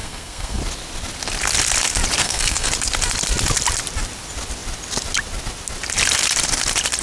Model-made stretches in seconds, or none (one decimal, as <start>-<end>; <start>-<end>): 0.0-0.6; 2.2-2.7